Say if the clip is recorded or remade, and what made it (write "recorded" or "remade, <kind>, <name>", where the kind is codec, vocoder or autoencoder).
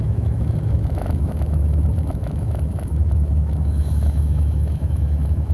remade, autoencoder, DAC-VAE